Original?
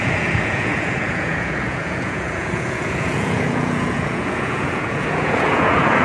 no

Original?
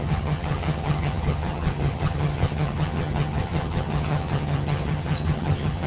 no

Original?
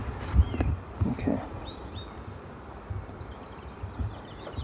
no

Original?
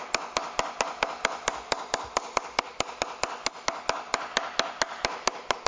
yes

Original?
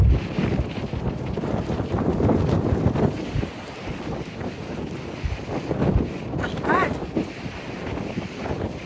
yes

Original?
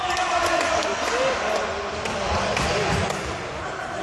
yes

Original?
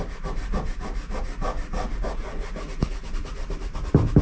yes